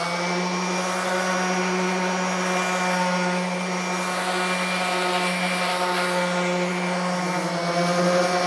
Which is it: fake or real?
real